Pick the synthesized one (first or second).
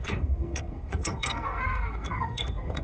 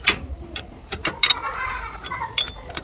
first